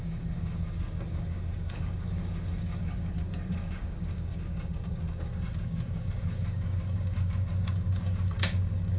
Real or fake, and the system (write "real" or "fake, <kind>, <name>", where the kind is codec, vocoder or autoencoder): fake, codec, DAC